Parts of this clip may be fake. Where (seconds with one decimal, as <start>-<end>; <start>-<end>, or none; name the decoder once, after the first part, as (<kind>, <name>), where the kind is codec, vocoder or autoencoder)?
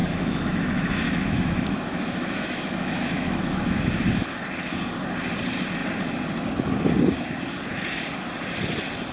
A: 0.0-3.8 (autoencoder, DAC-VAE)